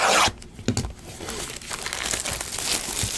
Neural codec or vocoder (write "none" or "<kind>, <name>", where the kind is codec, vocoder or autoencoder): none